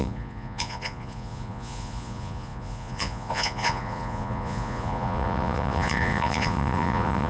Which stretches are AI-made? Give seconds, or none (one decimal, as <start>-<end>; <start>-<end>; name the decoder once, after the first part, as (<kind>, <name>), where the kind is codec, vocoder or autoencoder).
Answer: 0.0-7.3 (vocoder, Vocos)

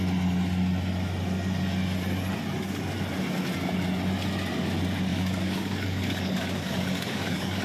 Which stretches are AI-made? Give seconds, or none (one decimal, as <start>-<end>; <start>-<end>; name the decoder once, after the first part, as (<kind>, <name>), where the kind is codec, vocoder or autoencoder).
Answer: 5.1-7.6 (codec, DAC)

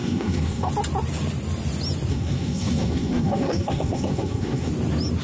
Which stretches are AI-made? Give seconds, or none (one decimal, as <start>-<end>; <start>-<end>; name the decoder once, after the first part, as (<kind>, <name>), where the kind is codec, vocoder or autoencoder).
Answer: 0.0-0.7 (codec, SNAC); 2.1-4.7

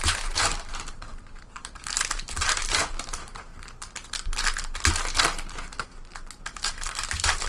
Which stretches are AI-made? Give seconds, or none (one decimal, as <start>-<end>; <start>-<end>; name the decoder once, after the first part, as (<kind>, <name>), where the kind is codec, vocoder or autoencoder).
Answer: 0.0-3.5 (vocoder, BigVGAN v2); 6.4-7.5

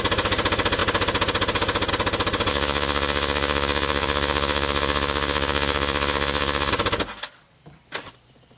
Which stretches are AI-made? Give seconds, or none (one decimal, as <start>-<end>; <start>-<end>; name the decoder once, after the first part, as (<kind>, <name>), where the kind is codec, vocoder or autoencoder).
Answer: 2.5-6.7 (vocoder, Vocos)

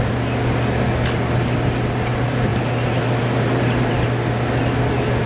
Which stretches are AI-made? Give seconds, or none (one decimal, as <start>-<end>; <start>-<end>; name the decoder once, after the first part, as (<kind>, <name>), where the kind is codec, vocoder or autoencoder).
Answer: none